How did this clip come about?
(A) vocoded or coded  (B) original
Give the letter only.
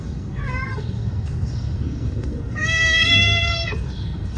A